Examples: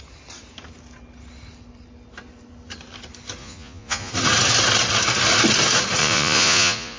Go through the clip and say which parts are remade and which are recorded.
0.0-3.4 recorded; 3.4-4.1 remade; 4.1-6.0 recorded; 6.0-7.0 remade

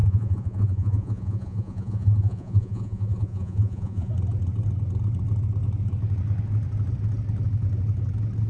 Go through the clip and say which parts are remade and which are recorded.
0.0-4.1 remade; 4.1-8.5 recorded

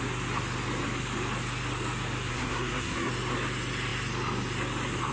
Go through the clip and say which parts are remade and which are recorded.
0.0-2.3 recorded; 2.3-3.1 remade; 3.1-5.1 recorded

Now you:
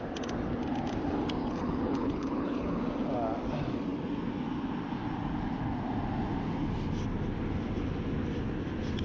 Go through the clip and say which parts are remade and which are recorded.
0.0-1.4 recorded; 1.4-2.8 remade; 2.8-9.0 recorded

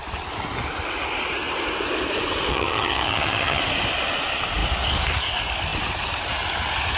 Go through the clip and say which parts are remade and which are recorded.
0.0-2.5 recorded; 2.5-3.6 remade; 3.6-7.0 recorded

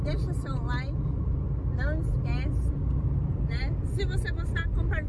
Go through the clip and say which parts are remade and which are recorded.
0.0-5.1 recorded

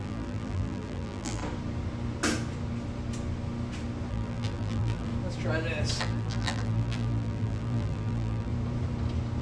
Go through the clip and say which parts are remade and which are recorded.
0.0-1.4 remade; 1.4-4.1 recorded; 4.1-5.1 remade; 5.1-6.0 recorded; 6.0-8.5 remade; 8.5-9.4 recorded